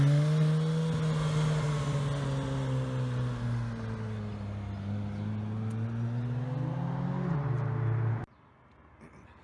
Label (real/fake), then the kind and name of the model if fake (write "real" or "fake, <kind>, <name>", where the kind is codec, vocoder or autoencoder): real